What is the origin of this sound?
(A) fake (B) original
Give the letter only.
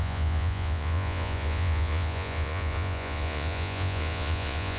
A